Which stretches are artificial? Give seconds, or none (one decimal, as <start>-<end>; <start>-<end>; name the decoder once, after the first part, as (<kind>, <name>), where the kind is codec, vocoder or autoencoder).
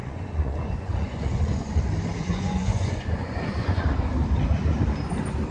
0.0-1.8 (vocoder, Vocos); 2.2-4.1